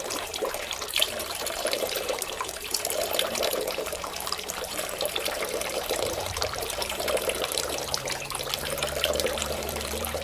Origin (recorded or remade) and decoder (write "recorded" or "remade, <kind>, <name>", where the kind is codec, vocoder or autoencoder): remade, vocoder, BigVGAN v2